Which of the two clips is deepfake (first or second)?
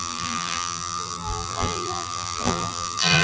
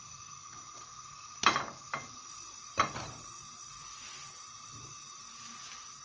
first